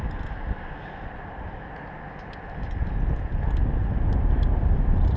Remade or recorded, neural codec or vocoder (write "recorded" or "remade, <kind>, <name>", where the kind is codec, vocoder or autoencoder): recorded